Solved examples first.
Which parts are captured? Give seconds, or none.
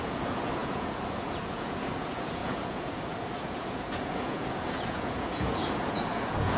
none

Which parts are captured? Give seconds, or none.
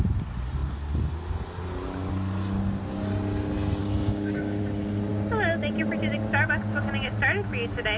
0.0-3.8; 4.6-8.0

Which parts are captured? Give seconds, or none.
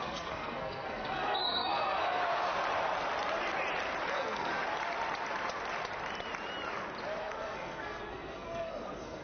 2.2-4.1; 4.5-7.2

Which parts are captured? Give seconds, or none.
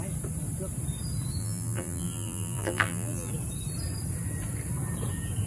0.0-1.4; 3.3-5.5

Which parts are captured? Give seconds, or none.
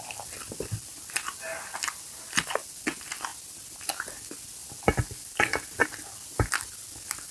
0.0-7.3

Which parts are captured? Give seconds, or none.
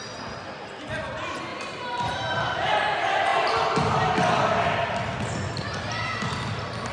0.0-1.5; 2.7-6.9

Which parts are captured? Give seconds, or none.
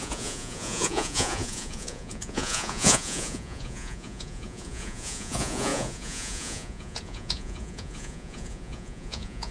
none